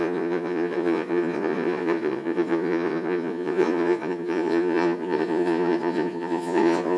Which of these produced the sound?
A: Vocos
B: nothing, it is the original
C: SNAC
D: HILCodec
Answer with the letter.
A